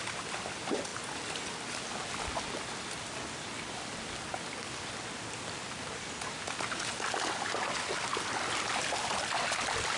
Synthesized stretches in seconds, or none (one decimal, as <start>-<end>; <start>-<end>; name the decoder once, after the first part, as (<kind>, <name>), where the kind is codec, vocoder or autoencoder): none